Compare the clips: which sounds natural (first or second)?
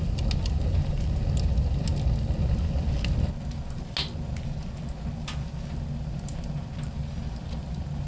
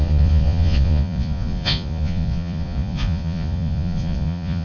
first